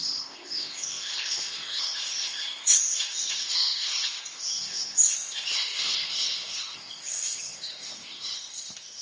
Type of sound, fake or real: fake